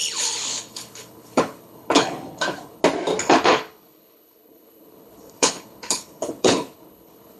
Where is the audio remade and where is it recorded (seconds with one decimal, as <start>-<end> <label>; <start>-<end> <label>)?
0.0-2.8 remade; 2.8-3.2 recorded; 3.2-7.4 remade